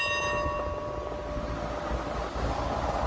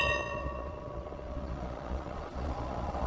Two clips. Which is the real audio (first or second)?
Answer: first